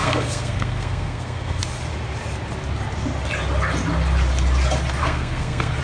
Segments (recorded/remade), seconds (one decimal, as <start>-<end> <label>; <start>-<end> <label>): 0.0-1.6 remade; 1.6-5.0 recorded; 5.0-5.8 remade